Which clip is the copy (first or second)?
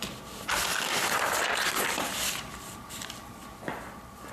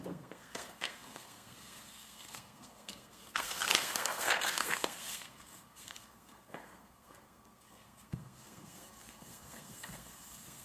second